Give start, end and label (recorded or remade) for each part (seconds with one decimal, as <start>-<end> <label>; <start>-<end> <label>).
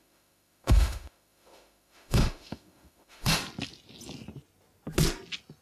0.0-3.4 remade; 3.4-5.6 recorded